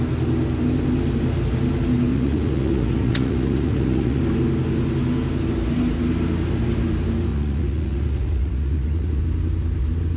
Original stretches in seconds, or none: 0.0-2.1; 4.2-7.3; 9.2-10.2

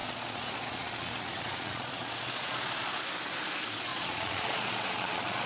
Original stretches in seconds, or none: 3.0-3.9

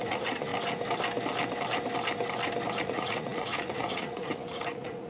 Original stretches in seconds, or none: 0.5-2.8